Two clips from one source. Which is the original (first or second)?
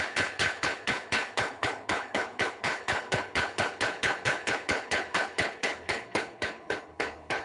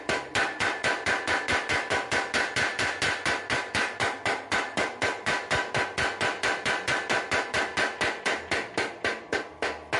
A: second